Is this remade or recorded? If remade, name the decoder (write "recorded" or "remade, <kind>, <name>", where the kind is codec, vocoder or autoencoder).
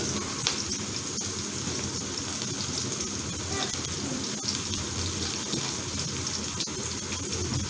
recorded